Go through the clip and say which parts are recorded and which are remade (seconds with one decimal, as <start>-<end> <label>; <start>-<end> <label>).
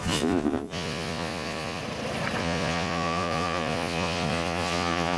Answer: 0.0-1.8 remade; 1.8-2.4 recorded; 2.4-5.2 remade